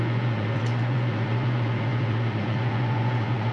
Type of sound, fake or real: fake